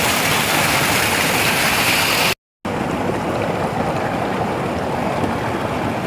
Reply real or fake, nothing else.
real